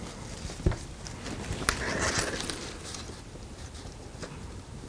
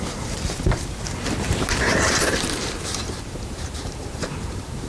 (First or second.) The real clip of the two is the first